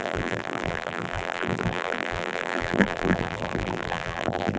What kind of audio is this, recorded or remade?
remade